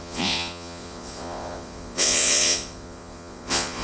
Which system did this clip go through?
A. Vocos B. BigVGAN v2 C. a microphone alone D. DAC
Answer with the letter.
A